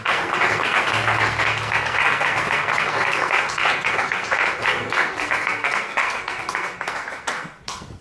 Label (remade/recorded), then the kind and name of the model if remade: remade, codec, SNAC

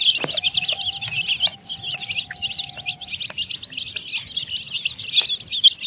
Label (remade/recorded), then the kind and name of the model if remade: recorded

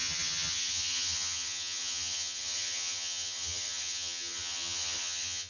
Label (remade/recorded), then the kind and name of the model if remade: remade, vocoder, HiFi-GAN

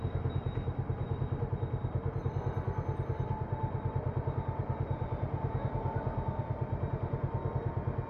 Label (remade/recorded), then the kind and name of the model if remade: recorded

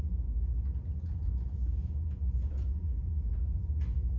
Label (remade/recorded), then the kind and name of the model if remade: remade, vocoder, Vocos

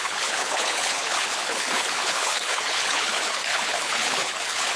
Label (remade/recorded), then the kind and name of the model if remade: remade, codec, HILCodec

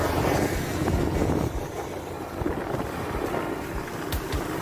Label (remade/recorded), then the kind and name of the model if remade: recorded